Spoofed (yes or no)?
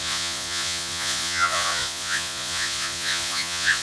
yes